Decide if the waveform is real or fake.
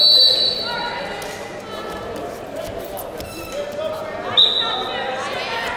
real